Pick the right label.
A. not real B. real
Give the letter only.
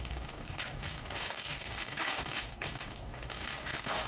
A